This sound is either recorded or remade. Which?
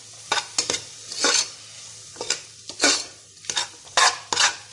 recorded